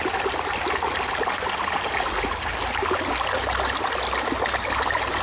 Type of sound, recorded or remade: recorded